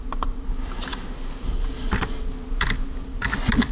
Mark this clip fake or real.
fake